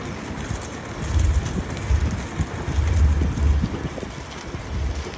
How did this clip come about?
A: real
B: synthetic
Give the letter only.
A